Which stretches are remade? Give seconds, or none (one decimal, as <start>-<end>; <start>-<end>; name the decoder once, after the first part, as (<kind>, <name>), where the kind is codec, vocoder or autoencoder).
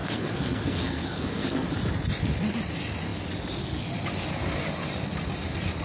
0.0-1.7 (codec, SNAC)